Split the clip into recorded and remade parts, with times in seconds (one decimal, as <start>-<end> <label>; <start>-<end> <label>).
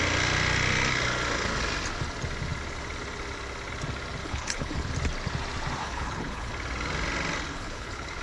0.0-4.2 recorded; 4.2-4.9 remade; 4.9-5.8 recorded; 5.8-6.5 remade; 6.5-7.5 recorded; 7.5-8.2 remade